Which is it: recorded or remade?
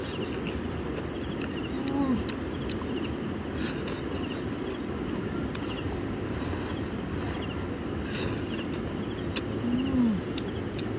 recorded